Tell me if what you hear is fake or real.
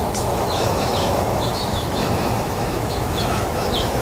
fake